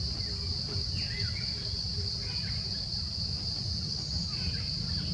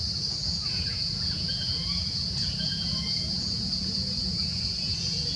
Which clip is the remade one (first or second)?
second